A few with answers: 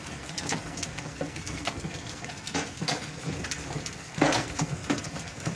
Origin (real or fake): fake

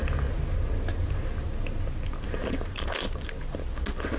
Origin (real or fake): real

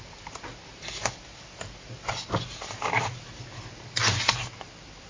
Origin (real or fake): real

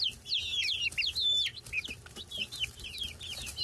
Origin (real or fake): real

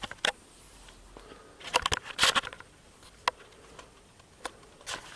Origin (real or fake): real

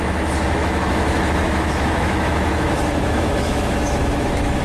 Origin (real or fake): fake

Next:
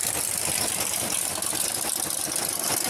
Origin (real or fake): real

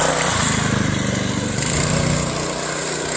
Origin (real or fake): real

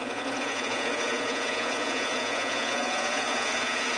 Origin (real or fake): fake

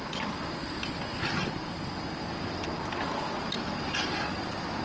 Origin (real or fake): real